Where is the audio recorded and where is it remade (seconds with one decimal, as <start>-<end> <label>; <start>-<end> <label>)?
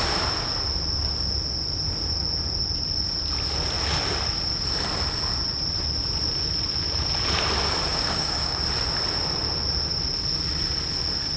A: 0.0-7.9 recorded; 7.9-8.6 remade; 8.6-11.4 recorded